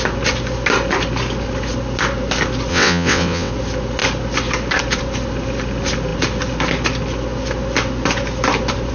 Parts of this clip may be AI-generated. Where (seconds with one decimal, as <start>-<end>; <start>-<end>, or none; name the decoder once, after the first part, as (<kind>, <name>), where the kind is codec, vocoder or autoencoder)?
2.7-3.5 (vocoder, WaveNeXt)